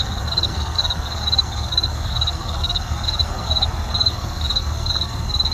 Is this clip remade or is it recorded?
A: remade